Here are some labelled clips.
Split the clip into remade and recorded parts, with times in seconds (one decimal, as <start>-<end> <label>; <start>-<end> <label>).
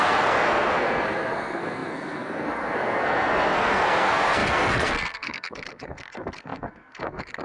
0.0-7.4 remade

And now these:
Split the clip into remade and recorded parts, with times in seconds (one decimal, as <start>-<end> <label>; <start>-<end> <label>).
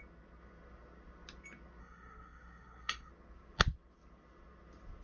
0.0-1.8 recorded; 1.8-3.1 remade; 3.1-5.0 recorded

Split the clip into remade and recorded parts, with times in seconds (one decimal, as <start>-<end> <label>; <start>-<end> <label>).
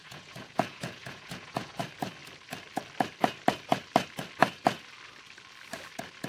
0.0-1.8 remade; 1.8-6.3 recorded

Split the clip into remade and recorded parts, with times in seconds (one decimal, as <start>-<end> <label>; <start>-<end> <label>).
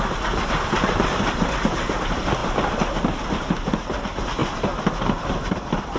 0.0-6.0 recorded